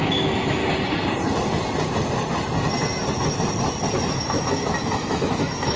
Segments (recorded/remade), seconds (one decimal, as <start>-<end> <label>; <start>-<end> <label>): 0.0-0.6 remade; 0.6-4.1 recorded; 4.1-5.8 remade